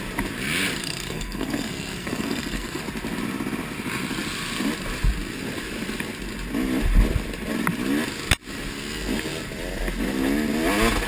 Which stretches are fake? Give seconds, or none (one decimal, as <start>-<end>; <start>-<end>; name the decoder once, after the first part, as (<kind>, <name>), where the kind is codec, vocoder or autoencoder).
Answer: 0.8-2.8 (codec, SNAC)